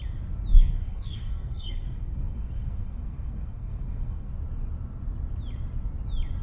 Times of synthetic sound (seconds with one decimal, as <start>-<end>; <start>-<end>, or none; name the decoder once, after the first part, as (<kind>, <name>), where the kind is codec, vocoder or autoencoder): 0.5-4.3 (codec, SNAC)